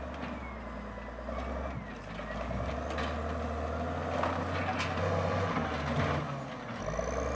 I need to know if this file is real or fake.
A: real